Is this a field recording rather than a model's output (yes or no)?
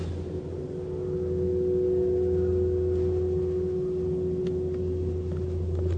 yes